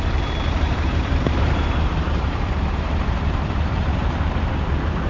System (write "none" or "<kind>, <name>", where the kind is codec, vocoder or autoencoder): vocoder, BigVGAN v2